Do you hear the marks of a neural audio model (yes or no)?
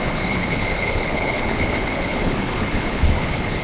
yes